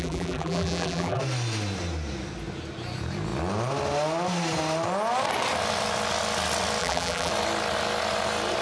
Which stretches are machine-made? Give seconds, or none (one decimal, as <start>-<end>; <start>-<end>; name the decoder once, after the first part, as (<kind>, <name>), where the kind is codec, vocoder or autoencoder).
0.0-1.2 (vocoder, BigVGAN v2); 6.8-7.3